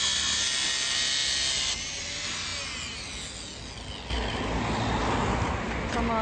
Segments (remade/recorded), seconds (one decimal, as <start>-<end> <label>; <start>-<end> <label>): 0.0-6.2 recorded